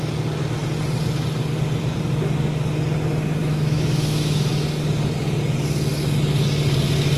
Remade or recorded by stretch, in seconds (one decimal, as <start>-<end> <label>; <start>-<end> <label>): 0.0-3.4 recorded; 3.4-4.5 remade; 4.5-7.2 recorded